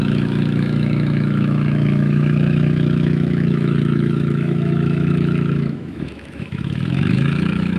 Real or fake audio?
fake